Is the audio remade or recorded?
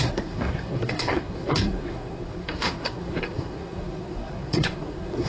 remade